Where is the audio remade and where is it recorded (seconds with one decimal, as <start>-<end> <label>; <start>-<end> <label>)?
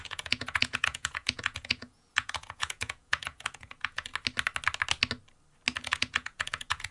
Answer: 0.0-4.1 remade; 4.1-5.8 recorded; 5.8-6.9 remade